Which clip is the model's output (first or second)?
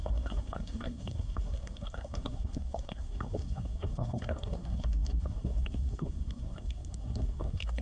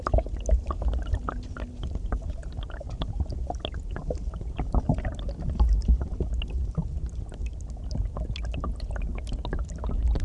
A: first